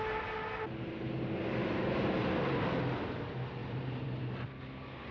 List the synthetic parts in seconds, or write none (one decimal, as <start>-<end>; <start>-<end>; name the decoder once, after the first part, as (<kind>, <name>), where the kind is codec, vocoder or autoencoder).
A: 1.6-2.4 (vocoder, BigVGAN v2); 3.6-4.2